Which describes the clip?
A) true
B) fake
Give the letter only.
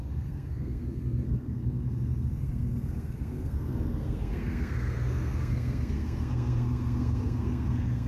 B